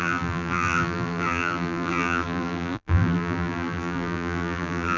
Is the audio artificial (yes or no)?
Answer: yes